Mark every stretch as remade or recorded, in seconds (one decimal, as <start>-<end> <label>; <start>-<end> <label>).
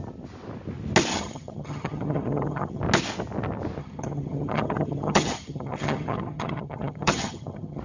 0.0-1.1 recorded; 1.1-2.8 remade; 2.8-3.8 recorded; 3.8-7.8 remade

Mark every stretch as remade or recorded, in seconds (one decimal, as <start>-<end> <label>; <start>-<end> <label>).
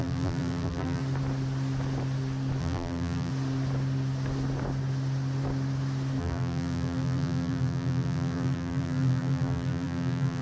0.0-1.0 remade; 1.0-2.6 recorded; 2.6-3.3 remade; 3.3-6.2 recorded; 6.2-10.4 remade